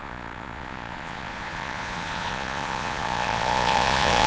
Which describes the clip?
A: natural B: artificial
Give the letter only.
B